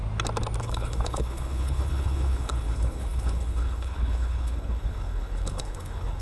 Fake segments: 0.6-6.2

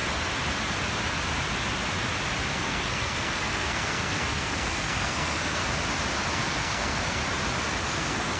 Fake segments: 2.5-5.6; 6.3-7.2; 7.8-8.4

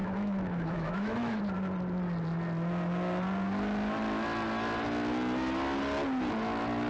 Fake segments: 0.0-1.4

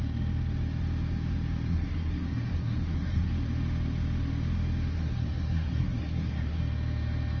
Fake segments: 1.7-3.3; 4.9-6.6

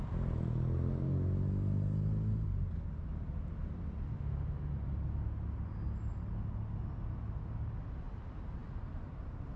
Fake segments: none